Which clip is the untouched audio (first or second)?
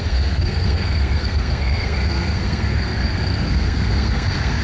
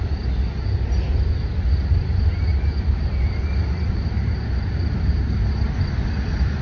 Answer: second